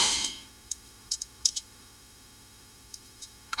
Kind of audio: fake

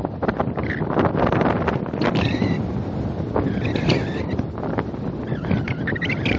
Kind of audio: real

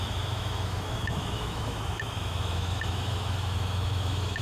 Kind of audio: fake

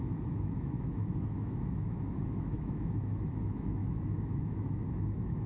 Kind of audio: fake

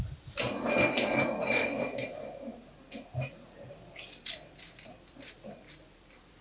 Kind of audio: real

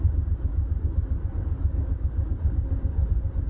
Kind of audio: real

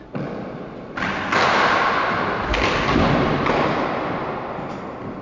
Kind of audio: real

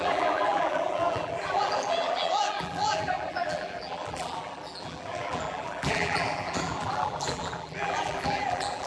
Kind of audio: fake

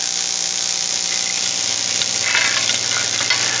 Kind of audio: real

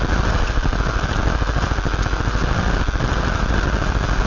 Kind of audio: real